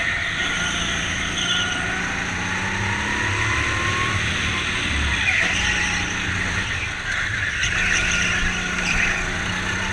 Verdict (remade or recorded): recorded